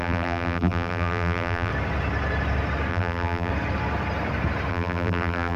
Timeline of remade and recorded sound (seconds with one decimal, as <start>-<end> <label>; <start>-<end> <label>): 0.0-1.7 remade; 1.7-2.9 recorded; 2.9-3.5 remade; 3.5-4.7 recorded; 4.7-5.6 remade